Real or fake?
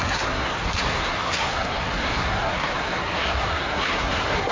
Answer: fake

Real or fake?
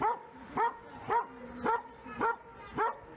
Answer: real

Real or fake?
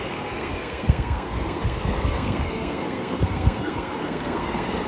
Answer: fake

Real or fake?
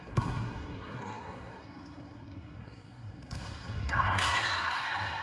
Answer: fake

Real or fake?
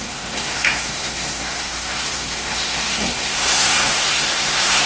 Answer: fake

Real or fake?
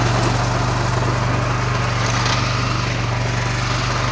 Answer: real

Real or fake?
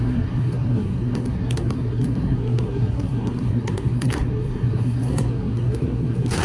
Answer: fake